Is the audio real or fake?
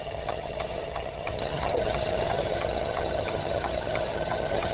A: fake